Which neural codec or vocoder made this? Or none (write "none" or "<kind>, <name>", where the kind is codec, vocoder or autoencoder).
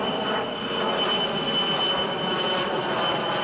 none